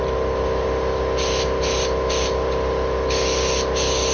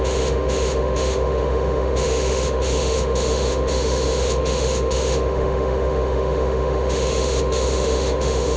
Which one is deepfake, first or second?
second